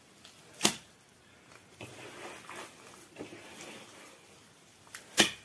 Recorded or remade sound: recorded